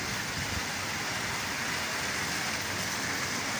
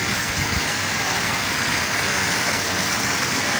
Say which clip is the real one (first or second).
first